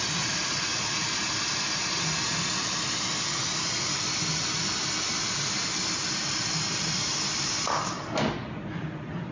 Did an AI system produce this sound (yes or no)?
no